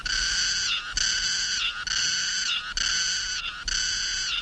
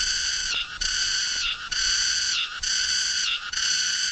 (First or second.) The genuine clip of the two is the first